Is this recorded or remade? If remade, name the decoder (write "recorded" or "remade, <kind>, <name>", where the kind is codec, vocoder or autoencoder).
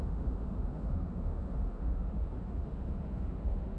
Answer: remade, autoencoder, DAC-VAE